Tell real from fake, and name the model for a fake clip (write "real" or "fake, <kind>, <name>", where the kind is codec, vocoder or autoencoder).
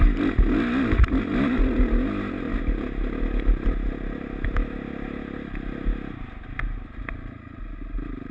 real